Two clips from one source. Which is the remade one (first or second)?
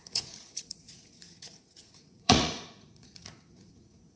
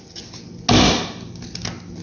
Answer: first